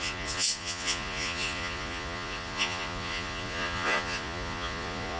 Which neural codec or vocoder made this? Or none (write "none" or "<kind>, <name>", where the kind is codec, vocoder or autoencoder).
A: vocoder, Vocos